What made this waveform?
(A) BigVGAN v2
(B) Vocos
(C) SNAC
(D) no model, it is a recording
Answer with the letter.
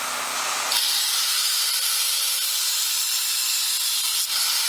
D